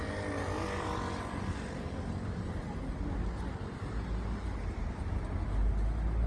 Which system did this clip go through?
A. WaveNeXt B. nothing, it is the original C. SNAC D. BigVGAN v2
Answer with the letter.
B